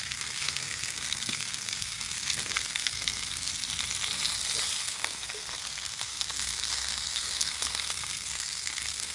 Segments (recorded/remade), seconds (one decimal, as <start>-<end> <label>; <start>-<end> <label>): 0.0-3.5 remade; 3.5-4.8 recorded; 4.8-9.1 remade